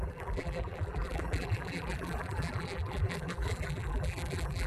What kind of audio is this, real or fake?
fake